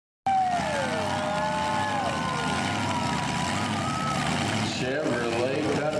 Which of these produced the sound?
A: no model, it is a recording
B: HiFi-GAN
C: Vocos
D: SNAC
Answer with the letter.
A